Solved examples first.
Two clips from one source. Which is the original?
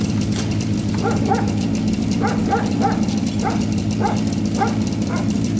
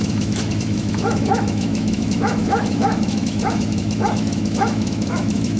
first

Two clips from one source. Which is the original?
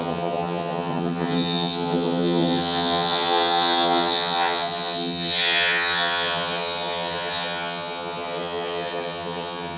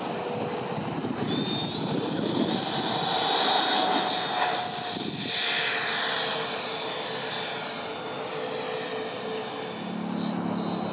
second